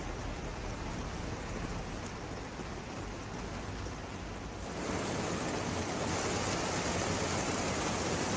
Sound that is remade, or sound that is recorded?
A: recorded